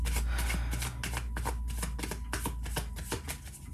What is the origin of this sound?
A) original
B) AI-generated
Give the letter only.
A